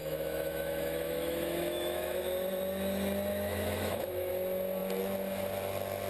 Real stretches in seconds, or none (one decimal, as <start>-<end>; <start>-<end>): 2.2-3.3; 4.3-6.1